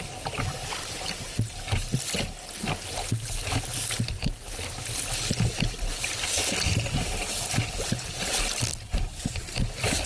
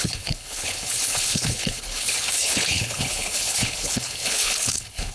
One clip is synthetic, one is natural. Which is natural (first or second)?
first